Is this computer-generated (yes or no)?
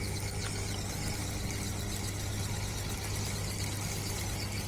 no